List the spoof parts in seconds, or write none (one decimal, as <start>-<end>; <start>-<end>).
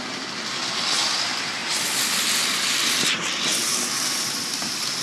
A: none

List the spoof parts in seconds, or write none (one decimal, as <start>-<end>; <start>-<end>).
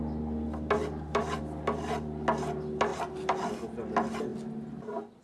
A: 0.8-1.4; 2.9-3.5